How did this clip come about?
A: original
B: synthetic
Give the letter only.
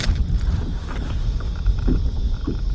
A